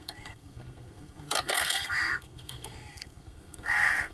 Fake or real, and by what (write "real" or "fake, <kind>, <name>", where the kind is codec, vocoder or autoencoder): fake, codec, SNAC